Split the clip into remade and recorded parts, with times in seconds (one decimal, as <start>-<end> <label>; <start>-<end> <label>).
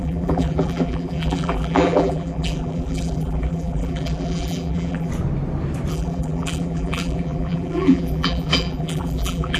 0.0-5.1 remade; 5.1-5.9 recorded; 5.9-9.6 remade